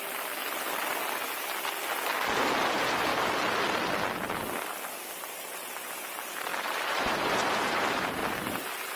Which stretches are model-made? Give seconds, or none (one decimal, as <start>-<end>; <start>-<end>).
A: 0.0-0.4; 2.7-3.1; 4.8-9.0